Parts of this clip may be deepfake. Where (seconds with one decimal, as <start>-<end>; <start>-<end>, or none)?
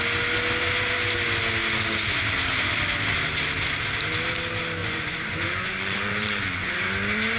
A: 4.8-6.7